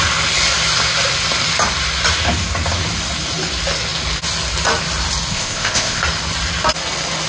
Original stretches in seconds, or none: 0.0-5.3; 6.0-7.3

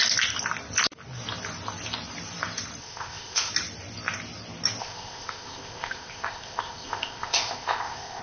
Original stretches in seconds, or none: 0.0-2.8; 3.5-4.8